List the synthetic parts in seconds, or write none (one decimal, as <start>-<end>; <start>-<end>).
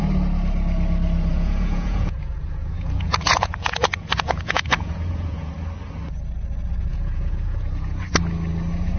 1.3-5.5; 6.9-8.0